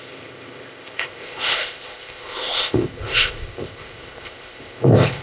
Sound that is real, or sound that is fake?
fake